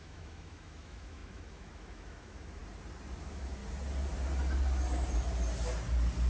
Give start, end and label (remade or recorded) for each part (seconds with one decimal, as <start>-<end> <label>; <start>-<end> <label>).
0.0-2.6 remade; 2.6-3.2 recorded; 3.2-3.6 remade; 3.6-6.3 recorded